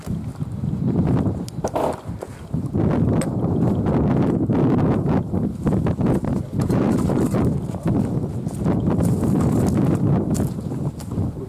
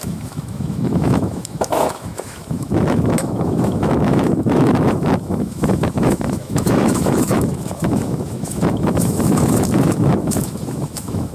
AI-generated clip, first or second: second